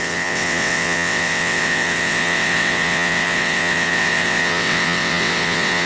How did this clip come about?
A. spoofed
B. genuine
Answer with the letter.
A